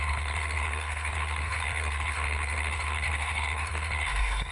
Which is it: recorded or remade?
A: remade